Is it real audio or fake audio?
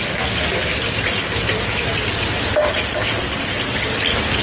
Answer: real